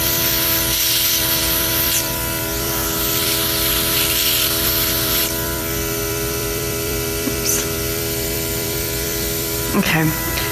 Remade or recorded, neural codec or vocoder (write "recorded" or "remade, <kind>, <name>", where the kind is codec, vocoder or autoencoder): remade, vocoder, BigVGAN v2